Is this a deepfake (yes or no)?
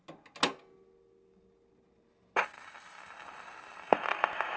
no